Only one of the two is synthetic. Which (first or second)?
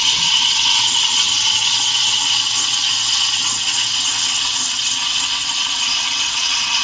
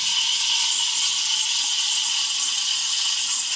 first